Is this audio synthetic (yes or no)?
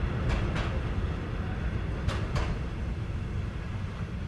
no